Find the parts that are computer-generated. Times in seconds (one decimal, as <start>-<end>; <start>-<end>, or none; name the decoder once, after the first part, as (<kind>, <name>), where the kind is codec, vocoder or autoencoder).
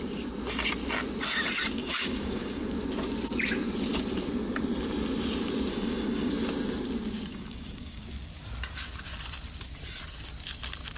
1.8-2.7 (codec, DAC); 5.7-6.3; 7.3-8.0